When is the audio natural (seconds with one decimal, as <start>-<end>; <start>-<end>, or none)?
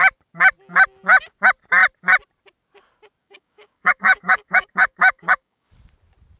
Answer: 0.0-3.2; 5.7-6.4